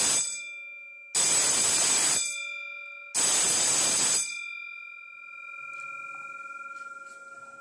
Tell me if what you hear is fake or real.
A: real